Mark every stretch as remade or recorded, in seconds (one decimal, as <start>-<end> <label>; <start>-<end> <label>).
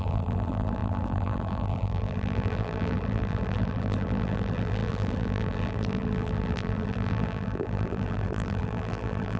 0.0-9.4 remade